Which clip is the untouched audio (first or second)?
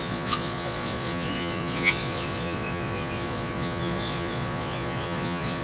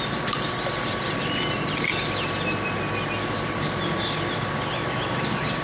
second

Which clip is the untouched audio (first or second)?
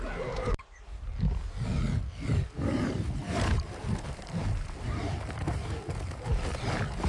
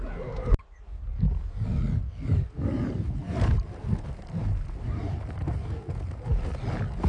second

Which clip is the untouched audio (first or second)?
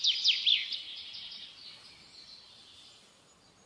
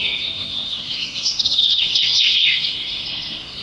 first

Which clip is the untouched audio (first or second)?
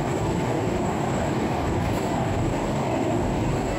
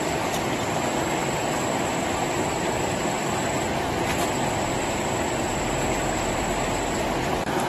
second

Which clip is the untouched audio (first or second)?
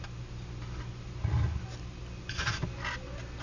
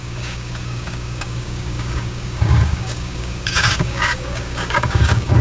first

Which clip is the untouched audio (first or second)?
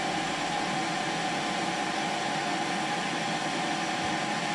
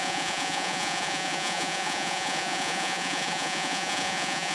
first